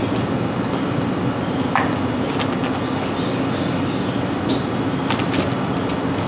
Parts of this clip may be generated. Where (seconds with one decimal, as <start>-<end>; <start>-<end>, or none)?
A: none